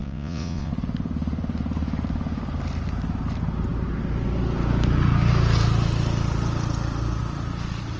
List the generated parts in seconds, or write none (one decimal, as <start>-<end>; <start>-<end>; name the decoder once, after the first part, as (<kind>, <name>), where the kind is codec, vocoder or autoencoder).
0.0-0.7 (vocoder, Vocos)